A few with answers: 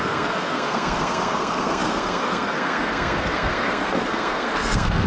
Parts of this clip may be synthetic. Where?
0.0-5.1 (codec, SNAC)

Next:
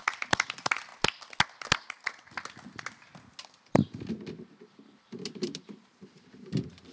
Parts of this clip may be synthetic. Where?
0.0-0.9 (vocoder, BigVGAN v2); 5.0-6.9